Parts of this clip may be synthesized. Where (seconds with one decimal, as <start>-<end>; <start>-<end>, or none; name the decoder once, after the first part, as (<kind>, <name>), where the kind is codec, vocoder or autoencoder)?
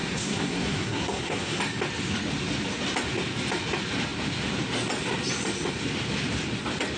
0.0-1.6 (codec, SNAC)